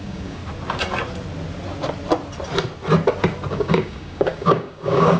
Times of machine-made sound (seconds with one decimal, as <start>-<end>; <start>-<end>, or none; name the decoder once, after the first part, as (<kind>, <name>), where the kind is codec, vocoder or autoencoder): 0.0-0.4 (codec, DAC); 3.5-5.2